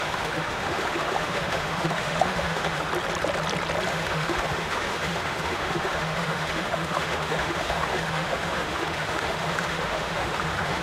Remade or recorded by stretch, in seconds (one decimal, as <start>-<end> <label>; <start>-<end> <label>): 0.0-2.9 remade; 2.9-3.9 recorded; 3.9-10.8 remade